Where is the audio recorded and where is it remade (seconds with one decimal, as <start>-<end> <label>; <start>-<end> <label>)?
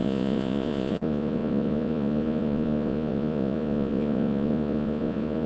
0.0-5.5 remade